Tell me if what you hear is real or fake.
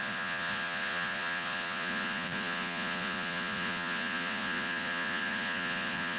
fake